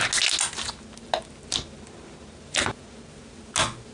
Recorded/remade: recorded